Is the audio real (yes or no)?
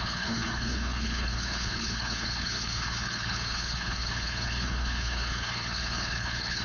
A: no